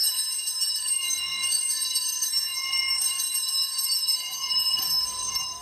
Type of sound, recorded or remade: remade